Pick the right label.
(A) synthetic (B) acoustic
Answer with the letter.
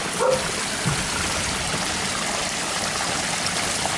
B